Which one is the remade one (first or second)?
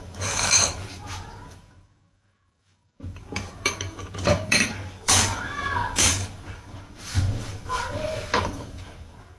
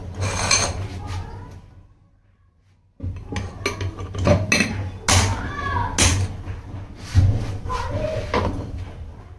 first